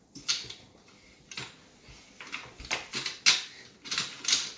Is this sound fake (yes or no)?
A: no